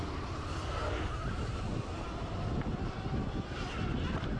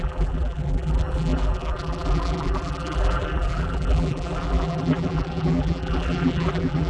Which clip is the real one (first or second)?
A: first